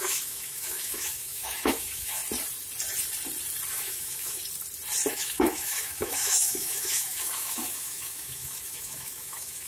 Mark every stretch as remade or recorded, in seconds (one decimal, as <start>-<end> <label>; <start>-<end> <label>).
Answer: 0.0-2.2 remade; 2.2-3.7 recorded; 3.7-4.4 remade; 4.4-5.1 recorded; 5.1-9.7 remade